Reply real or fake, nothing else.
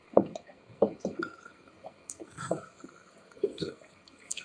fake